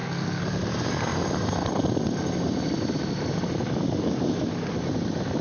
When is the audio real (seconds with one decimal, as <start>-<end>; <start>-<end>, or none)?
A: 0.6-5.4